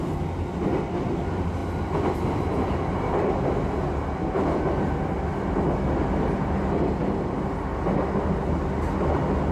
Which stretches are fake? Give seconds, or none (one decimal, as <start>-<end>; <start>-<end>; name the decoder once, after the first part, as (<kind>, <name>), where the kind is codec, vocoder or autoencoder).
none